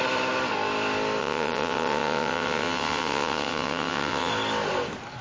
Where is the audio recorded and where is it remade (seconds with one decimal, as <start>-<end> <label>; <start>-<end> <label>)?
0.0-1.2 recorded; 1.2-4.3 remade; 4.3-5.2 recorded